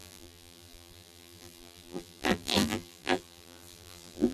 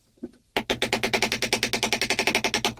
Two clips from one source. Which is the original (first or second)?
second